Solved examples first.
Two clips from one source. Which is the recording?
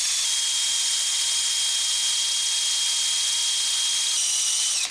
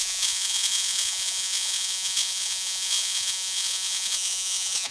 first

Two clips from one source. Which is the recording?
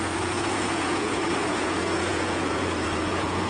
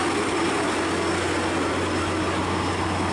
second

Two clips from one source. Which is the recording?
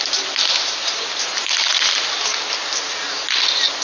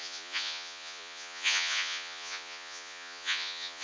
first